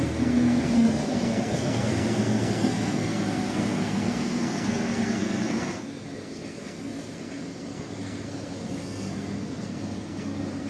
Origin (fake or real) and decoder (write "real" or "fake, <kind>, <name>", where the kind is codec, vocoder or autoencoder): fake, codec, SNAC